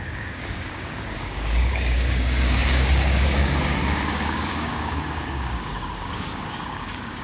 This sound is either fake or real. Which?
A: fake